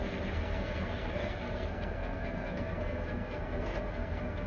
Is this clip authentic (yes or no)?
no